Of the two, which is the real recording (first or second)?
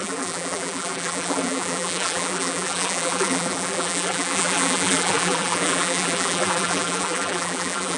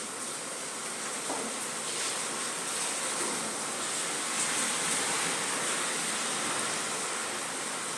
second